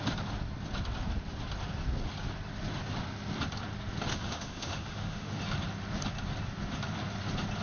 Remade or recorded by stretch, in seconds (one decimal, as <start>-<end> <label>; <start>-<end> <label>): 0.0-4.1 recorded; 4.1-5.4 remade; 5.4-7.6 recorded